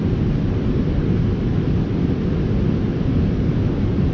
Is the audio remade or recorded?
recorded